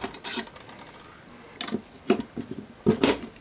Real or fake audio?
real